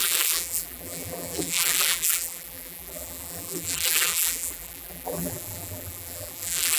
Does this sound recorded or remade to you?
remade